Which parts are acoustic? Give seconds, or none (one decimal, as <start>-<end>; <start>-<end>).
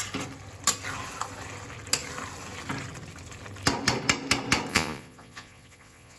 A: 0.0-4.7